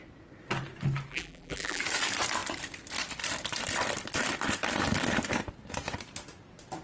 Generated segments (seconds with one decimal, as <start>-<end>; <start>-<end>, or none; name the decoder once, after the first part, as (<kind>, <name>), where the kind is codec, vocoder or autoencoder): 1.1-1.8 (vocoder, BigVGAN v2)